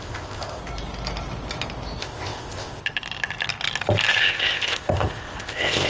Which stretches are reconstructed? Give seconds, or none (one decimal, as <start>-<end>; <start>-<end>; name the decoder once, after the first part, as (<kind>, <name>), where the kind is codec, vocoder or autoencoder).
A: 0.0-0.6 (codec, ZipCodec); 2.0-2.8; 4.2-5.9